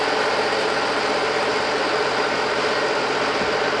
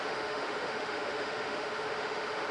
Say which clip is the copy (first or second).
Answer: second